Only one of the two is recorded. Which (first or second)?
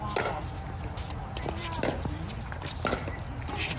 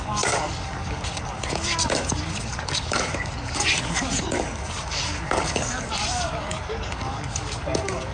first